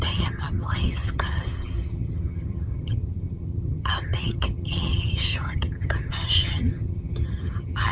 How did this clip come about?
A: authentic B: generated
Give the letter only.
B